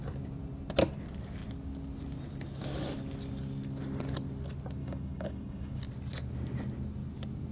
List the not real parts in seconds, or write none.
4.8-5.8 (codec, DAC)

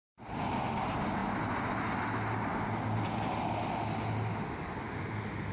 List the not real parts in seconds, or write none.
none

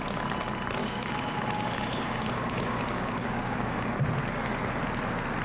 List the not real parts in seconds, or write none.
0.8-4.0 (codec, DAC)

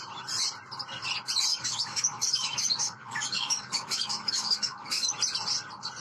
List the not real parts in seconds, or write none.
1.5-5.1 (codec, DAC)

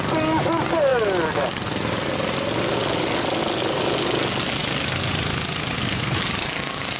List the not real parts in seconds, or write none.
none

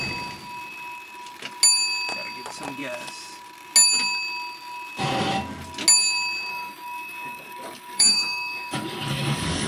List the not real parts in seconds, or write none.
6.5-9.7 (codec, DAC)

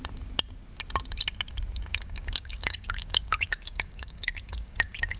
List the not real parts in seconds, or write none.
1.9-5.2 (codec, DAC)

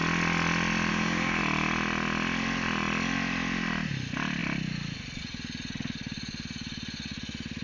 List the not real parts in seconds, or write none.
0.9-1.4 (codec, DAC)